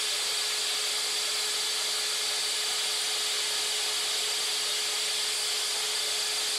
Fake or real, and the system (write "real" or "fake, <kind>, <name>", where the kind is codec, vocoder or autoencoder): real